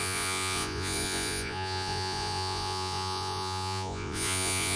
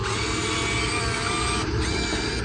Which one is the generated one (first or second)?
first